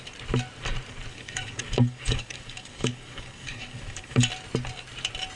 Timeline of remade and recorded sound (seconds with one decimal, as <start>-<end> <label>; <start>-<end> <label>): 0.0-1.1 recorded; 1.1-4.3 remade; 4.3-5.4 recorded

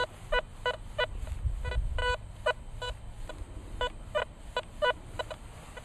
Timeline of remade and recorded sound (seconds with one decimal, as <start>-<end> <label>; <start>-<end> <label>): 0.0-5.8 recorded

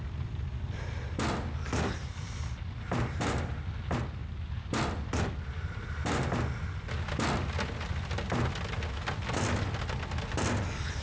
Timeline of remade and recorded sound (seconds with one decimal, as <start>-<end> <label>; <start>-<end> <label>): 0.0-11.0 recorded

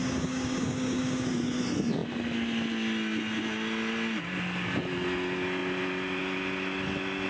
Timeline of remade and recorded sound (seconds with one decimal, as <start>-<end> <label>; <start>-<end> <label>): 0.0-1.6 remade; 1.6-7.3 recorded